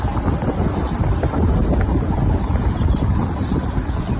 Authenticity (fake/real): real